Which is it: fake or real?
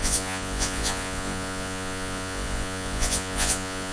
fake